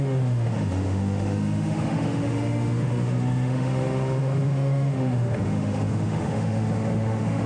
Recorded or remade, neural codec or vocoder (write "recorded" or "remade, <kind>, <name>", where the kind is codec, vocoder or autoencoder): remade, autoencoder, DAC-VAE